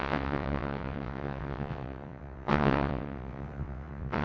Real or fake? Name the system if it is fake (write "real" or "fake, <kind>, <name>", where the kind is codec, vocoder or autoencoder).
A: fake, vocoder, WaveNeXt